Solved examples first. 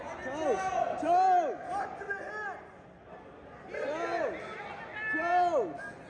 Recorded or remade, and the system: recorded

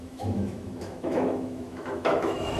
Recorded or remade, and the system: remade, autoencoder, DAC-VAE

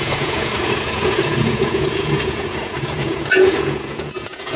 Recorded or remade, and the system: remade, vocoder, Vocos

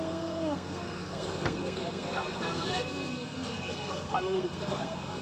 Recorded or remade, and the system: remade, codec, SNAC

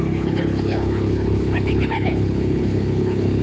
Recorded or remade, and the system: remade, codec, HILCodec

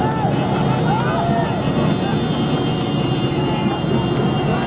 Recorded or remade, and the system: recorded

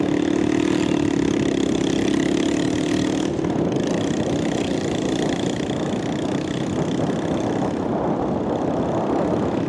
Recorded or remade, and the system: recorded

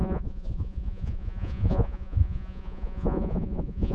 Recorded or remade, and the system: remade, vocoder, Vocos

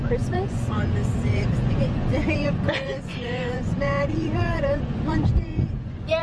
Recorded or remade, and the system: remade, vocoder, Vocos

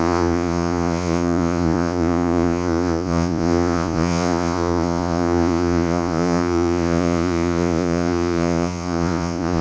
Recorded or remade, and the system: remade, vocoder, Vocos